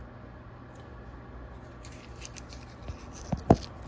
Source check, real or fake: real